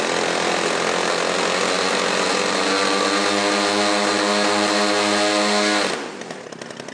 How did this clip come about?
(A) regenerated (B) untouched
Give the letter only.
B